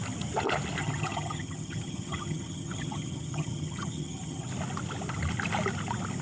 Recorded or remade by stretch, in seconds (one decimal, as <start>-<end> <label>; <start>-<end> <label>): 0.0-0.8 recorded; 0.8-4.5 remade; 4.5-6.2 recorded